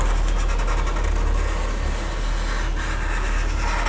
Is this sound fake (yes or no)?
no